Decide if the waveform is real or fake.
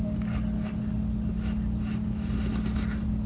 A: real